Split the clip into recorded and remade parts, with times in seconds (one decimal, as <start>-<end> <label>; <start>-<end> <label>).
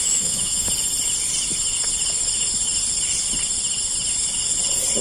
0.0-0.7 remade; 0.7-5.0 recorded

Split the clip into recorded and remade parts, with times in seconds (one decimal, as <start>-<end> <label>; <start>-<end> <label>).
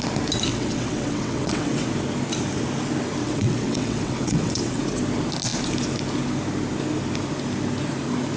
0.0-0.5 recorded; 0.5-1.9 remade; 1.9-3.2 recorded; 3.2-4.8 remade; 4.8-8.4 recorded